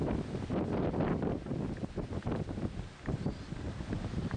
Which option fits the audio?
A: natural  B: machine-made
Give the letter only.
A